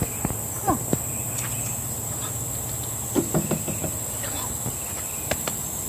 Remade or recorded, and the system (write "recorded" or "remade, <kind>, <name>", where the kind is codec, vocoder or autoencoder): recorded